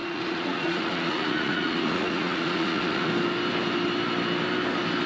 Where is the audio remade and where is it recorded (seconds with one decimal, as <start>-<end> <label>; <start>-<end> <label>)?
0.0-3.1 remade; 3.1-5.1 recorded